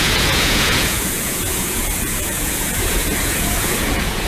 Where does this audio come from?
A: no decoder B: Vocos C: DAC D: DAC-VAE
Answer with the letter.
B